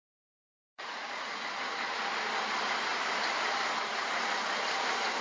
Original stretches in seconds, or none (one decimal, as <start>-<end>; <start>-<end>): 1.4-5.2